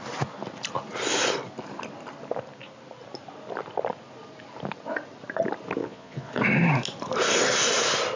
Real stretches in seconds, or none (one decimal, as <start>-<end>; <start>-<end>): 0.0-5.8; 6.3-8.2